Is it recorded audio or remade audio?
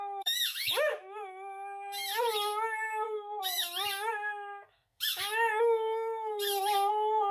remade